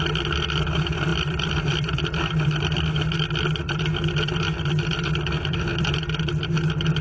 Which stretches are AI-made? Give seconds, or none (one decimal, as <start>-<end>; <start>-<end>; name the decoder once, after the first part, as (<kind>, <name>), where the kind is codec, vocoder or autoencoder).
1.1-2.0 (vocoder, BigVGAN v2); 5.7-6.2